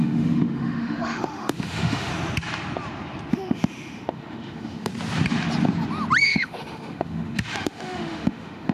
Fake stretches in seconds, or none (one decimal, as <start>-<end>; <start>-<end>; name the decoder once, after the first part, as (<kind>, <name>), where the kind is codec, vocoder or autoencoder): 0.0-2.1 (autoencoder, DAC-VAE); 3.3-4.9; 6.2-8.7